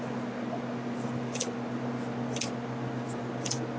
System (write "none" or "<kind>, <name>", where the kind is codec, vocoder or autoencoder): none